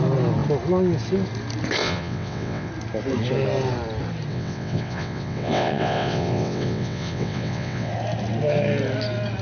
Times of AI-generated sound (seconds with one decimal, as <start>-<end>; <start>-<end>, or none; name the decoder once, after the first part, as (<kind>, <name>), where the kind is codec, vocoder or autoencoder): 1.8-2.7 (vocoder, WaveNeXt); 4.3-7.9